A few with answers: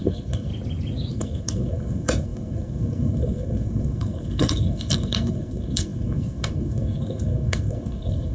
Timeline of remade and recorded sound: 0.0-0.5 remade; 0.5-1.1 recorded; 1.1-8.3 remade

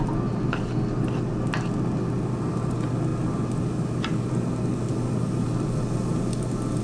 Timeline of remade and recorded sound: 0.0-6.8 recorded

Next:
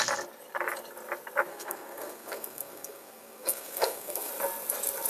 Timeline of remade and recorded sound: 0.0-1.5 recorded; 1.5-4.3 remade; 4.3-5.1 recorded